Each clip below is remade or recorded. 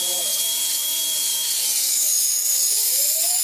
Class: remade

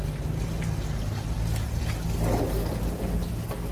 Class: recorded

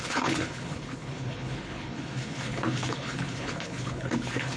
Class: remade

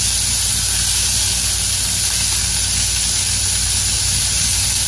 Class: recorded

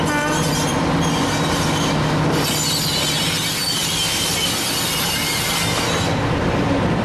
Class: recorded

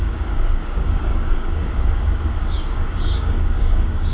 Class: remade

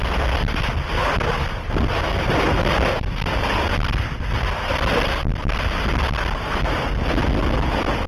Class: recorded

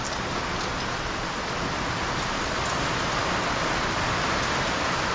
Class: recorded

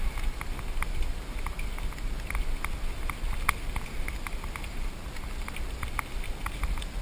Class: recorded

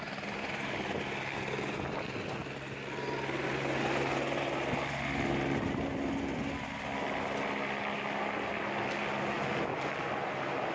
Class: recorded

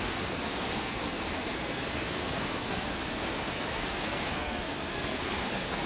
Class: remade